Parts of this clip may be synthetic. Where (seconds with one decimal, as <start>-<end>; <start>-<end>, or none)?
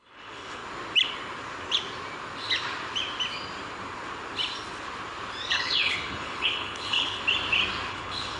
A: 0.0-0.6; 5.5-7.2; 7.9-8.4